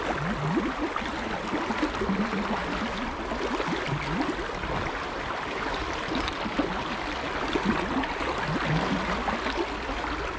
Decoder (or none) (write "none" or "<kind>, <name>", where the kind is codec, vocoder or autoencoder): none